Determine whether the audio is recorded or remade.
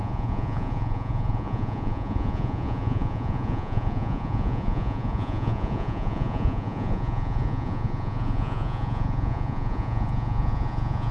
remade